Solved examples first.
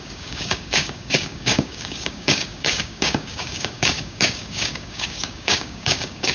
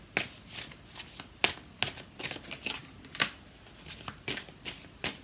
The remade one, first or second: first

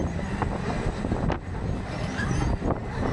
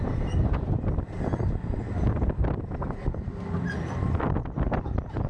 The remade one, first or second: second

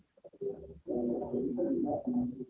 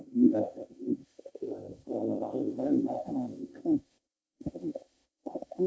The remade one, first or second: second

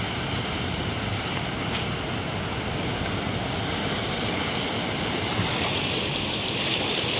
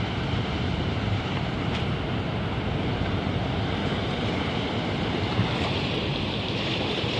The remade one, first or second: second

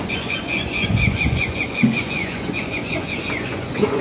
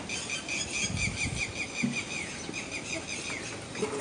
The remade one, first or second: first